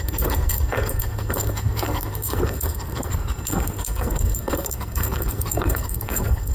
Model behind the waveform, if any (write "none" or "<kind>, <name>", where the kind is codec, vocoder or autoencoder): codec, SNAC